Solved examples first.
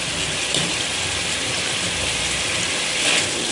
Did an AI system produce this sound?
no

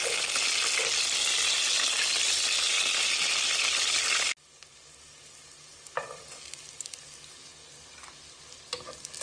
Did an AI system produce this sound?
no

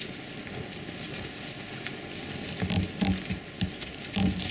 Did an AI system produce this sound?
no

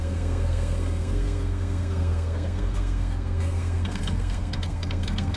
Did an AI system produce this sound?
yes